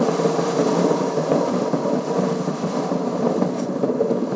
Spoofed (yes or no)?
no